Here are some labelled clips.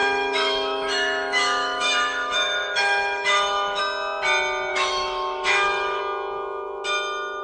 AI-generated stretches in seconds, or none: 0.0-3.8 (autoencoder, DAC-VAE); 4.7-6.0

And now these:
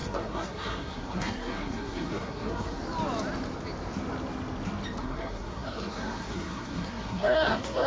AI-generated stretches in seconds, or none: 0.0-2.8 (codec, SNAC); 5.0-7.9

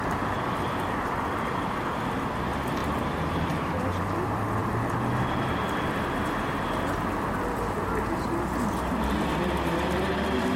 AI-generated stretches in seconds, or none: 2.8-3.8 (vocoder, BigVGAN v2)

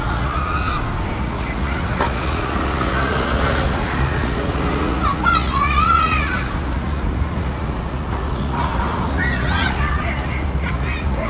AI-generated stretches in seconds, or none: 0.0-0.7 (vocoder, Vocos); 1.2-11.3

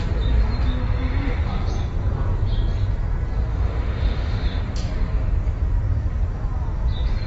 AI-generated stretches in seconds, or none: 3.5-4.6 (autoencoder, DAC-VAE)

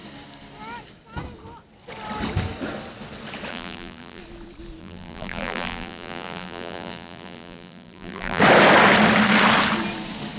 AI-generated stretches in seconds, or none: 3.5-4.2 (vocoder, BigVGAN v2); 4.8-8.4

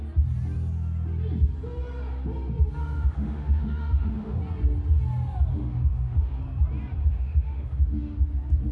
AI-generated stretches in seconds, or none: 2.8-4.4 (autoencoder, DAC-VAE); 5.5-6.4; 7.0-8.2